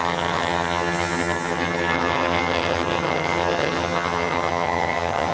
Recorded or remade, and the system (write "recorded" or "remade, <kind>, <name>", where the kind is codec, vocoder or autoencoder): remade, vocoder, HiFi-GAN